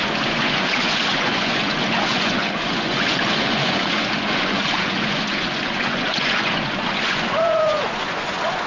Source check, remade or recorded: remade